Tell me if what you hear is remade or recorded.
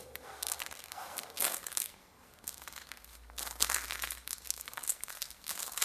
remade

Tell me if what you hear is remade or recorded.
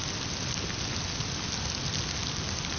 recorded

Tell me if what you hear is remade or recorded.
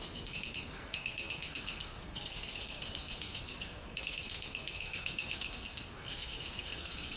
remade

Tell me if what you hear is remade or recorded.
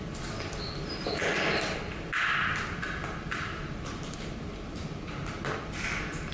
remade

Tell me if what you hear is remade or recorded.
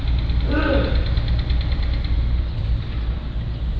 remade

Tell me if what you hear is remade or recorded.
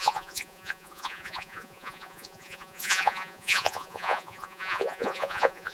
remade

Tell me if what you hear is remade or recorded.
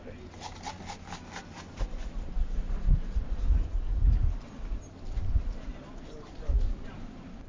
recorded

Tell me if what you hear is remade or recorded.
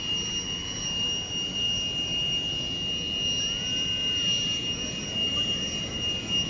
recorded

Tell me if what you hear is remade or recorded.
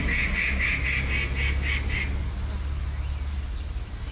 recorded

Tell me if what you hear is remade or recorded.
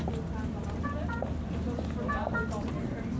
recorded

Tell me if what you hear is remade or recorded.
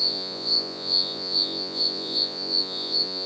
remade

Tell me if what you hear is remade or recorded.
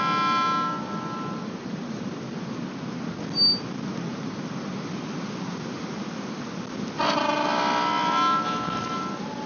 recorded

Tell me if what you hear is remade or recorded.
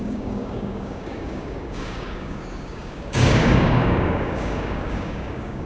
remade